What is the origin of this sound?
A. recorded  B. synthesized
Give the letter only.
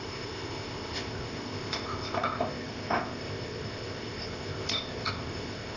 B